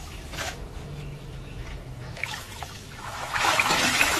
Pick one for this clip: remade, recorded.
remade